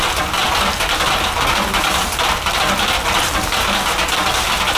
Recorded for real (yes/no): yes